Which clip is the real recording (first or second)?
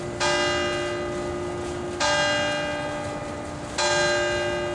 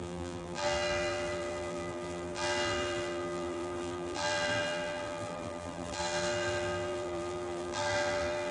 first